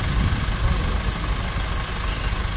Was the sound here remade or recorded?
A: recorded